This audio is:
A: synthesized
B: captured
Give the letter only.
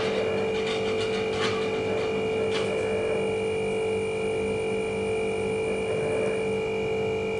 B